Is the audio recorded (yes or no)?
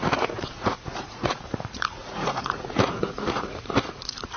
no